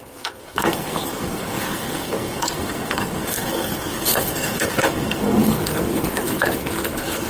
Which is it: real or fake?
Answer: fake